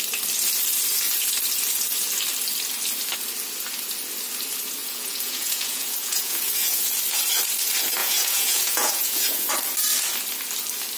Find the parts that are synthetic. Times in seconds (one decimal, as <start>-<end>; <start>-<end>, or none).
4.8-6.9; 8.0-9.5